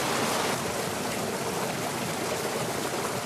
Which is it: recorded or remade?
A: recorded